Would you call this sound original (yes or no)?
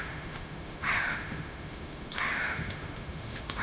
no